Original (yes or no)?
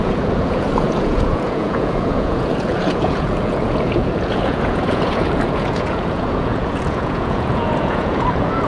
no